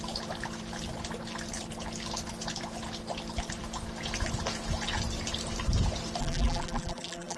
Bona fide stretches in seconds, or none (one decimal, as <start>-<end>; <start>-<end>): 0.0-6.2